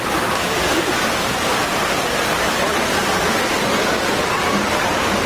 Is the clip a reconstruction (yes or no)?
no